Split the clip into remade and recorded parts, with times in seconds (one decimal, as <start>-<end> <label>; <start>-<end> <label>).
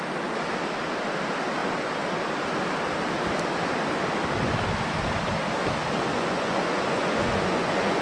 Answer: 0.0-6.1 recorded; 6.1-8.0 remade